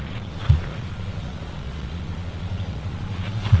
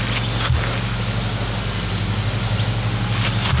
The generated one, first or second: first